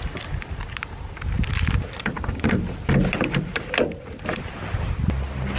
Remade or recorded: recorded